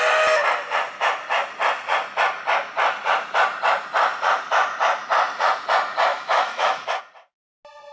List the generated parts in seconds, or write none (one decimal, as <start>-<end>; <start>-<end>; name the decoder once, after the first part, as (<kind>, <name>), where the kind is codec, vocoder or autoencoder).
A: 6.1-7.0 (autoencoder, DAC-VAE)